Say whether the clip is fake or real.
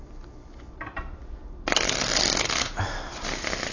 real